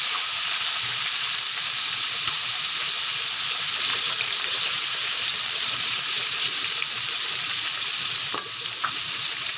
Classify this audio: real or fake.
fake